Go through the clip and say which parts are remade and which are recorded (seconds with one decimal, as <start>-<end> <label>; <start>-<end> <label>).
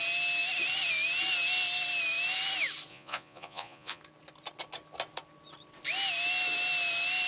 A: 0.0-2.9 recorded; 2.9-4.0 remade; 4.0-7.3 recorded